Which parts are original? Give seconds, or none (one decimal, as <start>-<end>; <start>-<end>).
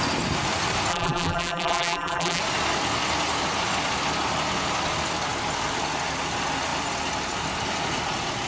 0.0-0.9; 2.4-8.5